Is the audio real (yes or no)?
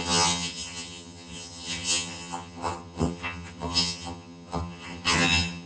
no